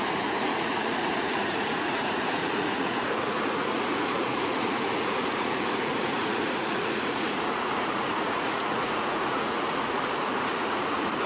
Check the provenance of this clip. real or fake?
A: fake